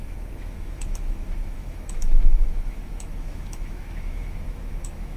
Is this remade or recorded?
remade